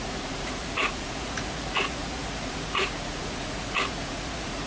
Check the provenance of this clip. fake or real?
fake